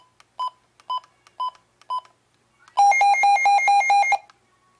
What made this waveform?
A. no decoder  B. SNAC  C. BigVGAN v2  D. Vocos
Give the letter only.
A